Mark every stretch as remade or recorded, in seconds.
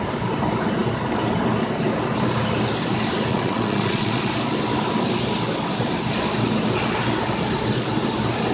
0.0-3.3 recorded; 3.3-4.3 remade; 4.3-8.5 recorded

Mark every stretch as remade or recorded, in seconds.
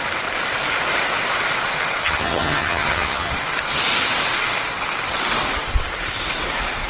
0.0-2.0 recorded; 2.0-3.3 remade; 3.3-6.9 recorded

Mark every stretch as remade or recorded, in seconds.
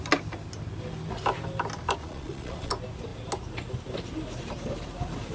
0.0-2.0 recorded; 2.0-2.7 remade; 2.7-5.3 recorded